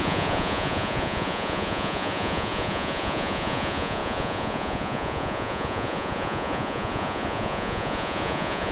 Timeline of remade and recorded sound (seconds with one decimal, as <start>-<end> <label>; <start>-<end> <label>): 0.0-8.7 remade